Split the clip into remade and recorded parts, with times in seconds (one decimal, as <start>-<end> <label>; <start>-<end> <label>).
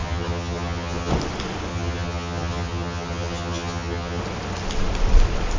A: 0.0-1.1 remade; 1.1-1.7 recorded; 1.7-4.2 remade; 4.2-5.6 recorded